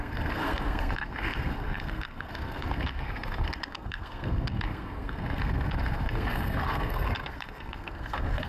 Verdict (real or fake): fake